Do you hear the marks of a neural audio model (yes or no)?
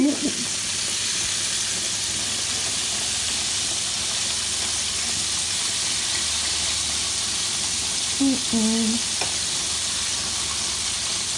no